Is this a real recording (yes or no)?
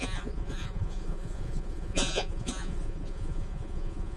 no